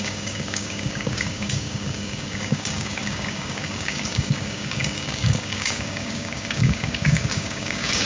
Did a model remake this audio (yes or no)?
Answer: yes